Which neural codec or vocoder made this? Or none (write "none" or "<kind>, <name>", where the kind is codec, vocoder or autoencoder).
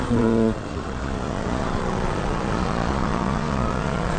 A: vocoder, Vocos